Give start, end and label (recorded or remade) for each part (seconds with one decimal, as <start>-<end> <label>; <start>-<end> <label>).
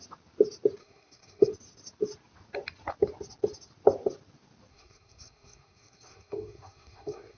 0.0-0.8 recorded; 0.8-1.5 remade; 1.5-4.7 recorded; 4.7-7.4 remade